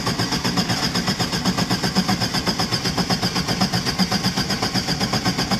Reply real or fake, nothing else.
real